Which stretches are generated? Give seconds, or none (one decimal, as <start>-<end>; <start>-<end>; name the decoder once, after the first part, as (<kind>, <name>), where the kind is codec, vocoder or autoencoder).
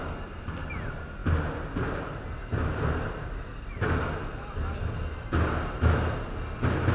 none